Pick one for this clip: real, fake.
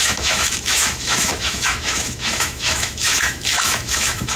fake